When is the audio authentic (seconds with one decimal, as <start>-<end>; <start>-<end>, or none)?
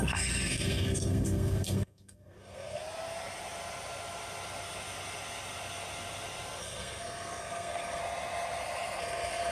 2.8-6.6; 8.0-9.0